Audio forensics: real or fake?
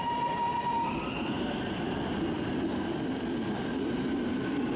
real